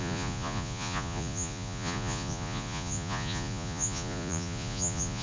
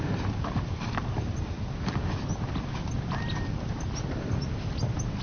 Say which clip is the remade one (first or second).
first